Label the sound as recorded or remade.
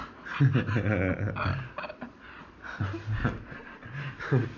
recorded